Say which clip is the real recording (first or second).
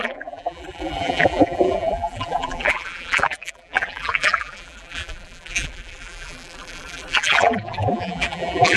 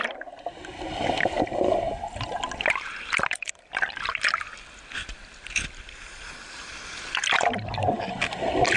second